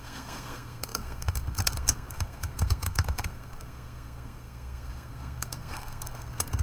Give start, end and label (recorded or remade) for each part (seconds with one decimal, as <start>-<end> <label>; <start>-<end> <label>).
0.0-6.6 remade